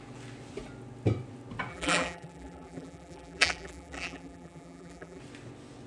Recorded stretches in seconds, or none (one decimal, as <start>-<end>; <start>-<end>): 0.0-1.7; 5.2-5.9